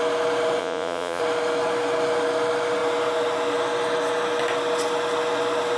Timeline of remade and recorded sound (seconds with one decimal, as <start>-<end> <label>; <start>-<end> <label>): 0.0-0.6 recorded; 0.6-1.2 remade; 1.2-5.8 recorded